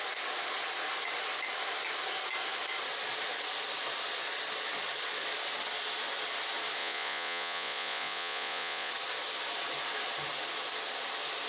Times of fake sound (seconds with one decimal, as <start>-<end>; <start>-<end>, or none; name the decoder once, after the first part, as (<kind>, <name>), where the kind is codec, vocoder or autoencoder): 6.8-8.9 (vocoder, Vocos)